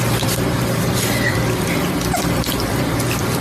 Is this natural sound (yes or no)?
no